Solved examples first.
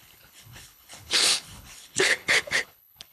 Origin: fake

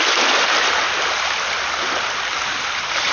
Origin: real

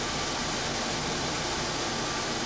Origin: real